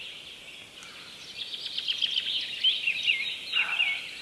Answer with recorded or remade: recorded